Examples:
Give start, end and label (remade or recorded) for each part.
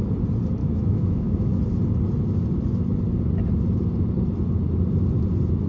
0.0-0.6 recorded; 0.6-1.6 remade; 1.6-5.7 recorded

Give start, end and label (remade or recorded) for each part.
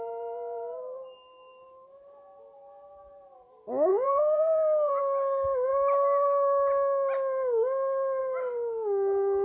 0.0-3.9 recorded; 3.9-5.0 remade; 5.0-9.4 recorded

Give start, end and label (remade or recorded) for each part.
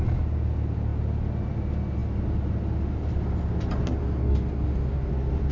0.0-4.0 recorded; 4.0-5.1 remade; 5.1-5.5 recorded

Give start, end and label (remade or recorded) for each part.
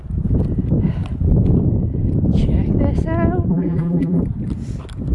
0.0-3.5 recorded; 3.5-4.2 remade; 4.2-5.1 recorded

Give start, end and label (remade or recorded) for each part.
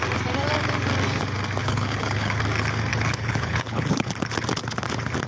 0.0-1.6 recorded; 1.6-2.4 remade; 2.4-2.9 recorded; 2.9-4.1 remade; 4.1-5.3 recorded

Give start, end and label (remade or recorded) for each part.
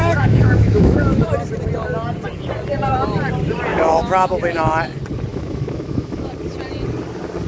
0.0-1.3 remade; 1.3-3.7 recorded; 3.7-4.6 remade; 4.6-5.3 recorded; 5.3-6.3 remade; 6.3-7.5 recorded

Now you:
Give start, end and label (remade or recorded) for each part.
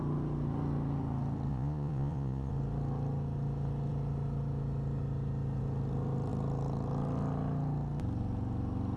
0.0-1.5 recorded; 1.5-2.5 remade; 2.5-9.0 recorded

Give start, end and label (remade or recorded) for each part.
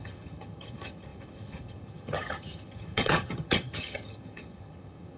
0.0-5.2 remade